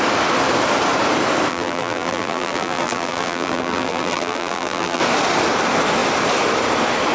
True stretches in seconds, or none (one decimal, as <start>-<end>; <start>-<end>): 0.0-1.5; 5.0-7.1